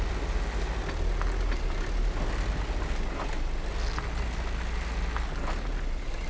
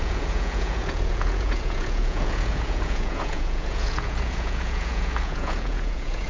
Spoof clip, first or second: second